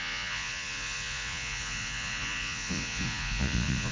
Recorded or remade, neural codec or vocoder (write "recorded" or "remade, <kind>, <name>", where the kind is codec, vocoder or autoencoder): remade, vocoder, Vocos